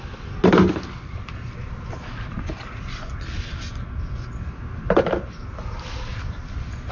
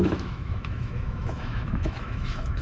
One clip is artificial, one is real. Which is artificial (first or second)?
second